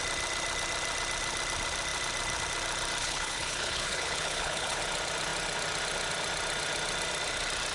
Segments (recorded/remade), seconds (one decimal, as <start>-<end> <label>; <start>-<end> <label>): 0.0-3.0 recorded; 3.0-4.8 remade; 4.8-7.7 recorded